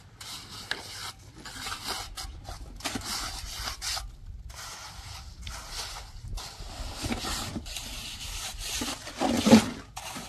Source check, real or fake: real